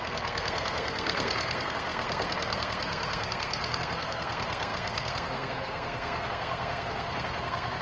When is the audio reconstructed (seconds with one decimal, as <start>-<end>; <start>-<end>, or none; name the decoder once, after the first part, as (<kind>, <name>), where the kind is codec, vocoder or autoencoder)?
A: 0.0-7.8 (codec, SNAC)

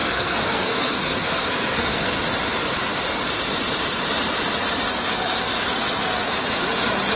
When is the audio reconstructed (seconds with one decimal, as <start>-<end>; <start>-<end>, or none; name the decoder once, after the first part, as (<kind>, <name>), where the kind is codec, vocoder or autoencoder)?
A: 0.0-2.1 (codec, SNAC)

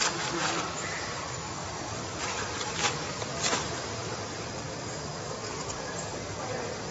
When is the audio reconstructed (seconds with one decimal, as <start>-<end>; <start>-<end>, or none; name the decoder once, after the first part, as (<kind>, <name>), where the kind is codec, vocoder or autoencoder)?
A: none

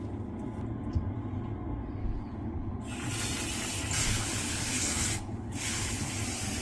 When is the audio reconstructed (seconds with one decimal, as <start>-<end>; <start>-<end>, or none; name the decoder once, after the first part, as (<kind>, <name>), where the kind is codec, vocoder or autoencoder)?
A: 2.0-2.8 (codec, HILCodec); 4.0-6.1